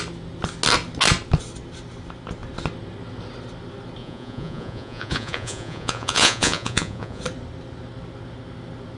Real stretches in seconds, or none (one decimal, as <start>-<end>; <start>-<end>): 0.0-4.0; 7.2-9.0